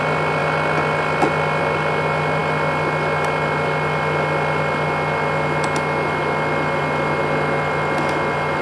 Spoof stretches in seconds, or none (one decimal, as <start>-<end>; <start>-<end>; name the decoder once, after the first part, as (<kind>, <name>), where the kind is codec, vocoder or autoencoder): none

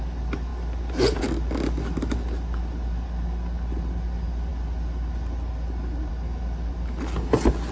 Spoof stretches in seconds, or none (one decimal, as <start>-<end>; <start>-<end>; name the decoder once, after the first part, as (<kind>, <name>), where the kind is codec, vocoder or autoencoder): none